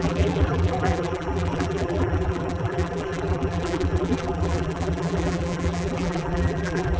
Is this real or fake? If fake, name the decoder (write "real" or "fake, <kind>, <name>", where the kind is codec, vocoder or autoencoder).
fake, vocoder, BigVGAN v2